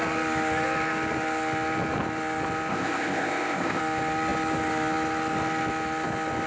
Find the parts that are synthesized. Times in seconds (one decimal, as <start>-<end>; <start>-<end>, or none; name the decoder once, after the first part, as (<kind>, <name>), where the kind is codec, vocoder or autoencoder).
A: 2.7-3.8 (codec, ZipCodec)